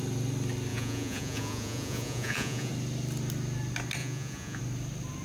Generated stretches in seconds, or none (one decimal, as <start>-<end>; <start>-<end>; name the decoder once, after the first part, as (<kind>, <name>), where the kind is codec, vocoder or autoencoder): 0.7-2.7 (vocoder, Vocos); 4.0-4.6